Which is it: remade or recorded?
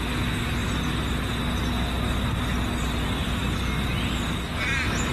recorded